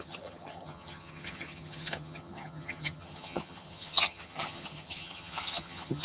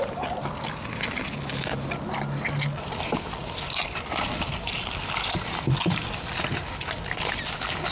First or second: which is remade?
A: first